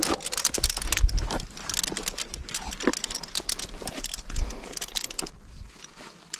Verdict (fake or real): real